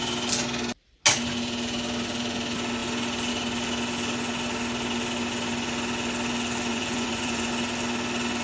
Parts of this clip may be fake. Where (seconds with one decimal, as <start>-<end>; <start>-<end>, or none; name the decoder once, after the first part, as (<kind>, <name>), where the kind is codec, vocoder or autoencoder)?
6.7-7.5 (vocoder, Vocos)